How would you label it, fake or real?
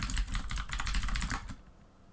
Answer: real